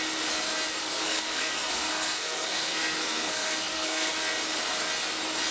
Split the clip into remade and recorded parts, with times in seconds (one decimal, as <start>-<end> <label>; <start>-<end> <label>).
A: 0.0-0.8 recorded; 0.8-4.1 remade; 4.1-5.5 recorded